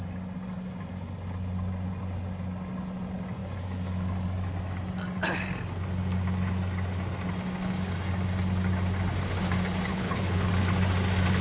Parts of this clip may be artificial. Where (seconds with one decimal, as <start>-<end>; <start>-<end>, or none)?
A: 9.9-10.5